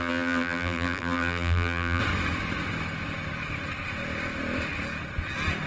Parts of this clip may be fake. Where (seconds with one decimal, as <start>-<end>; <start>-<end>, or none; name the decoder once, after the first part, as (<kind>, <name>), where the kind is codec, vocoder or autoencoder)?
0.0-2.0 (vocoder, BigVGAN v2)